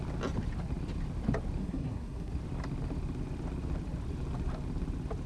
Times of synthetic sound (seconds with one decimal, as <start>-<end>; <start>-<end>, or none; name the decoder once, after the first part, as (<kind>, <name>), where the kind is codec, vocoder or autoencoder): 1.6-2.3 (codec, SNAC)